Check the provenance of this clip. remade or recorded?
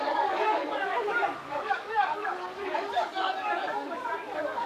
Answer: remade